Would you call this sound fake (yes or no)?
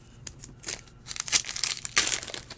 no